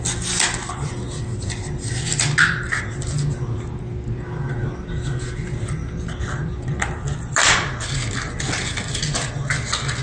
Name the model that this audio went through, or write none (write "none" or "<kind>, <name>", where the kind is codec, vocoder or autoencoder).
none